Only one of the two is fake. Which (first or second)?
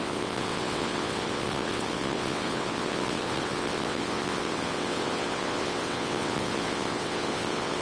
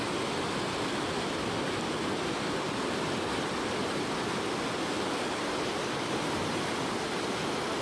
first